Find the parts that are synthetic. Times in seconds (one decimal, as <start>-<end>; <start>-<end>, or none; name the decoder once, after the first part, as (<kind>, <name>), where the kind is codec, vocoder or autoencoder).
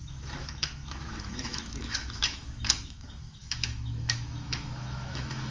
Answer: 0.0-5.5 (autoencoder, DAC-VAE)